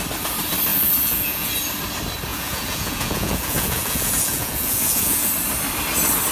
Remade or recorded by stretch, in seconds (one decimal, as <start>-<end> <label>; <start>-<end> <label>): 0.0-0.7 recorded; 0.7-1.5 remade; 1.5-2.3 recorded; 2.3-5.3 remade; 5.3-6.3 recorded